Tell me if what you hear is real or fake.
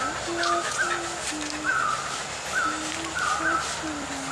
real